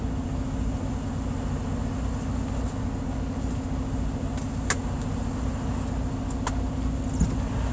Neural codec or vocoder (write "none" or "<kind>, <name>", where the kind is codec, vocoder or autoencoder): none